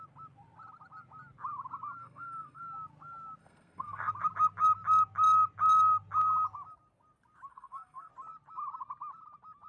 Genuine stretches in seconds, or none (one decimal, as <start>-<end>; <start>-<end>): 0.0-2.0; 2.6-3.4; 4.1-7.5; 8.1-9.7